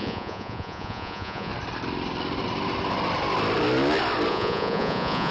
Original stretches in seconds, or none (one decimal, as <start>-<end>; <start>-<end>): 1.5-4.3